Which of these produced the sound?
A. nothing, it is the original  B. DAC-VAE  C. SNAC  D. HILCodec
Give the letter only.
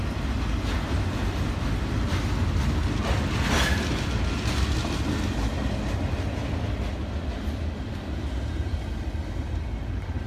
A